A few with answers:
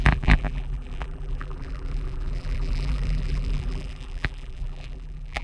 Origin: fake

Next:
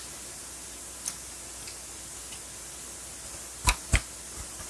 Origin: real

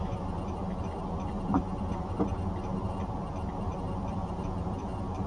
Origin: fake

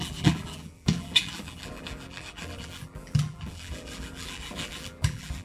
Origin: fake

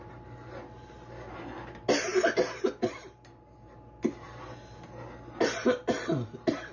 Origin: real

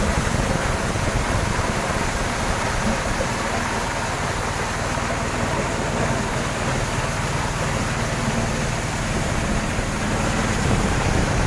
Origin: real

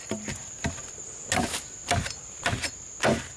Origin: real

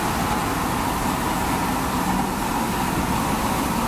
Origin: real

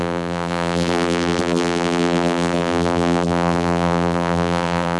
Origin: fake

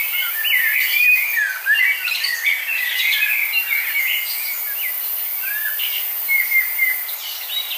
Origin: real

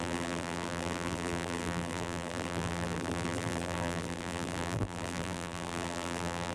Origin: fake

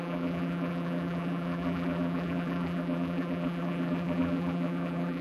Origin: fake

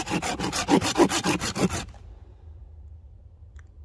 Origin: fake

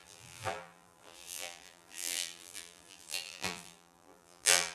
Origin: fake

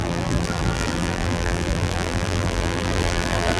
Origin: fake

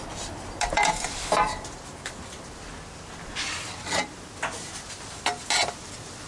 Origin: real